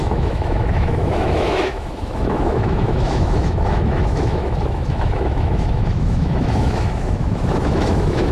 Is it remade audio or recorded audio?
remade